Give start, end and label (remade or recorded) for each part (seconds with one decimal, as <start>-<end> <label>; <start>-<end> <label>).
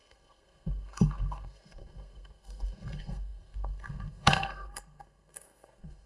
0.0-6.1 remade